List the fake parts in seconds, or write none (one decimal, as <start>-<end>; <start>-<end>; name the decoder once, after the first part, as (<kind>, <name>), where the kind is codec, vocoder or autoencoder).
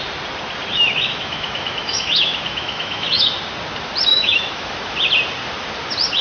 0.7-3.3 (autoencoder, DAC-VAE); 4.1-4.7